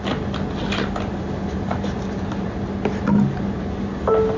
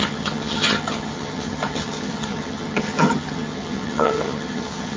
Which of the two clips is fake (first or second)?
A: second